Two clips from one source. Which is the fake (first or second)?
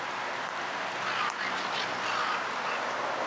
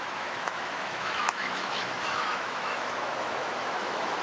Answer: second